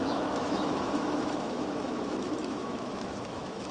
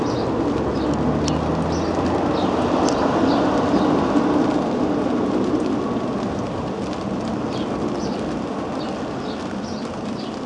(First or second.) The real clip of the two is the second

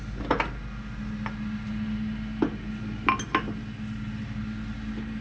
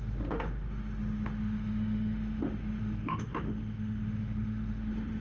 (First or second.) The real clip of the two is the first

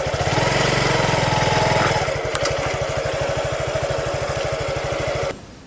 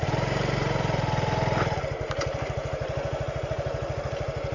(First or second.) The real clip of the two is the first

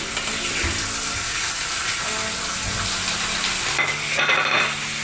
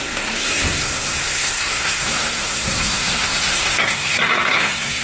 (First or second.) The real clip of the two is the first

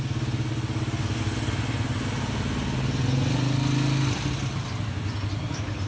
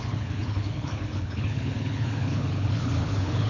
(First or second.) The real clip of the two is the first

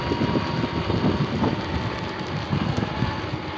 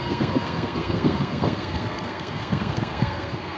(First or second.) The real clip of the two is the first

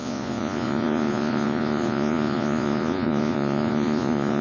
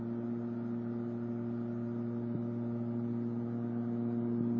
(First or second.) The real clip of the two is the second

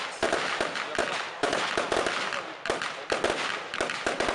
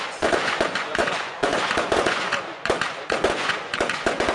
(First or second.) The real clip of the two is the first